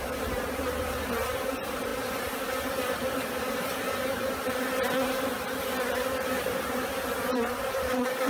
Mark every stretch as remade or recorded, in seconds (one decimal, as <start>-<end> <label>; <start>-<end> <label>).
0.0-8.3 remade